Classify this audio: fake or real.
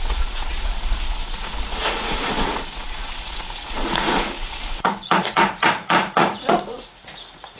fake